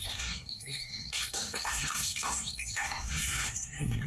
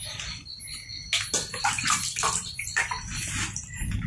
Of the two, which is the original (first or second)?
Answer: second